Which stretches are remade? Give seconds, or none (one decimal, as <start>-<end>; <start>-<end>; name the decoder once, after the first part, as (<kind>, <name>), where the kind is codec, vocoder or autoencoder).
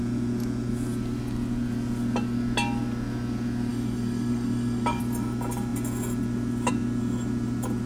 3.7-5.0 (codec, DAC)